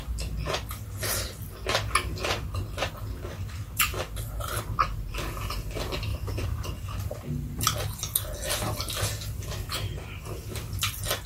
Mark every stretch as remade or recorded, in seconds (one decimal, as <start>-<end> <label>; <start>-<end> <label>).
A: 0.0-6.1 recorded; 6.1-6.9 remade; 6.9-11.3 recorded